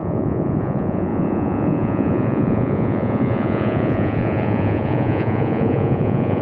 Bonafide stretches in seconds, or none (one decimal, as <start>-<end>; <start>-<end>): none